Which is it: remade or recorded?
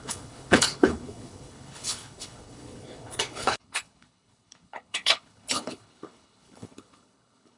remade